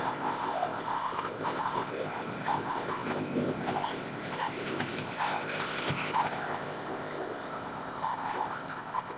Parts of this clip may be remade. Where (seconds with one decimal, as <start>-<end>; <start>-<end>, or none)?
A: 0.0-9.2